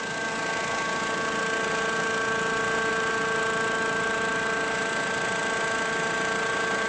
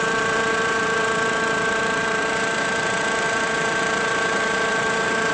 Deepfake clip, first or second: second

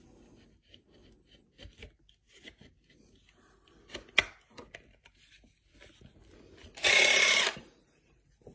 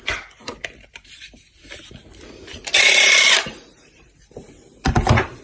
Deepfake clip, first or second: second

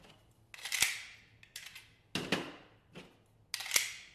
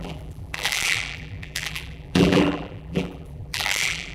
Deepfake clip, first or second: second